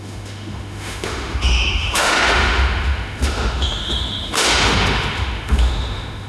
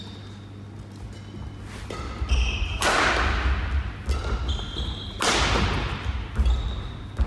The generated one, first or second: first